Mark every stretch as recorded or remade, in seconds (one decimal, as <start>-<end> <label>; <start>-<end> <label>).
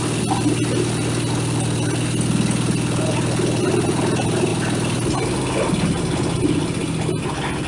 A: 0.0-7.7 recorded